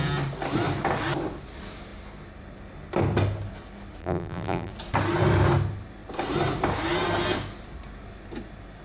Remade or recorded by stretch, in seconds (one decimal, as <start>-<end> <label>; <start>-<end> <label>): 0.0-4.0 recorded; 4.0-4.7 remade; 4.7-8.8 recorded

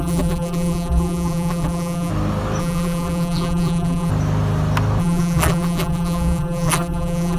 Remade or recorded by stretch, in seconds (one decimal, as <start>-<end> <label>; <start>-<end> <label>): 0.0-2.1 remade; 2.1-2.6 recorded; 2.6-4.1 remade; 4.1-5.0 recorded; 5.0-7.4 remade

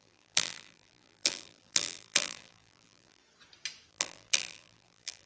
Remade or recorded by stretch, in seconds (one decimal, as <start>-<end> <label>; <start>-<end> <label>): 0.0-3.2 remade; 3.2-3.9 recorded; 3.9-5.3 remade

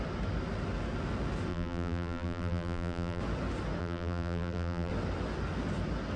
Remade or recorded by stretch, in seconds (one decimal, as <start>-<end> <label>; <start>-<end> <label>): 0.0-1.5 recorded; 1.5-3.2 remade; 3.2-3.8 recorded; 3.8-4.9 remade; 4.9-6.2 recorded

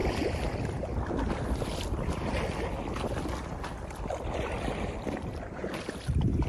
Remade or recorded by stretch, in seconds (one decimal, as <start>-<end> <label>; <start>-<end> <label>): 0.0-2.3 remade; 2.3-6.5 recorded

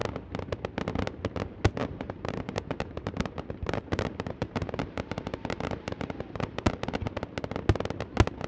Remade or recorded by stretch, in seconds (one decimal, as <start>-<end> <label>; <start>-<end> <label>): 0.0-1.8 recorded; 1.8-6.7 remade; 6.7-8.5 recorded